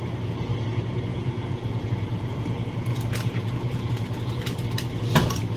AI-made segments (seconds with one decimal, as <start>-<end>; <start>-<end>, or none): 1.1-4.4